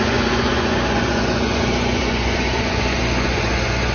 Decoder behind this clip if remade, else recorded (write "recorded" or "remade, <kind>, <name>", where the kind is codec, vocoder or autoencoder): remade, vocoder, Vocos